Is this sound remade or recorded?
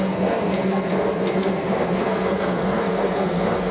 remade